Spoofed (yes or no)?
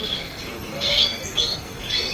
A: yes